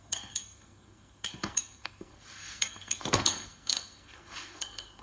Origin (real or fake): fake